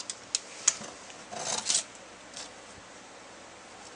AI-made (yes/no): no